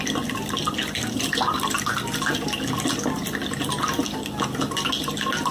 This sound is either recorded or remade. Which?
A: recorded